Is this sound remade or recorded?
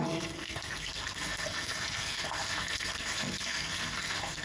remade